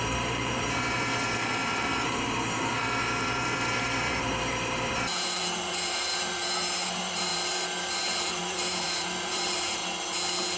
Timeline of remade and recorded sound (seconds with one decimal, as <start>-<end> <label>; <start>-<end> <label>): 0.0-9.8 remade; 9.8-10.6 recorded